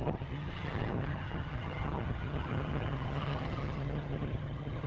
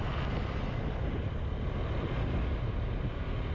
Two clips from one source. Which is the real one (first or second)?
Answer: second